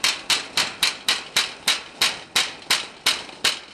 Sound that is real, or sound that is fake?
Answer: real